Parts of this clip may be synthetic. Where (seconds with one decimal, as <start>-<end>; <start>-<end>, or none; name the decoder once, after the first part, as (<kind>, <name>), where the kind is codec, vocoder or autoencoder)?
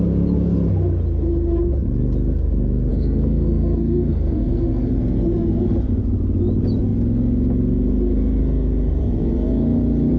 2.9-4.9 (codec, SNAC)